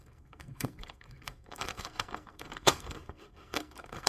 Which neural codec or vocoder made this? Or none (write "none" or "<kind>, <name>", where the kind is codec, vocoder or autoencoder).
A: codec, SNAC